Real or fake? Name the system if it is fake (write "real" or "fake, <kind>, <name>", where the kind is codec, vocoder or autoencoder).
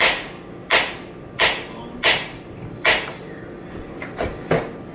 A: real